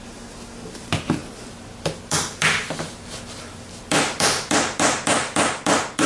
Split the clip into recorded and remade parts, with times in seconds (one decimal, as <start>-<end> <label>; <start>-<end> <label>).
0.0-6.1 recorded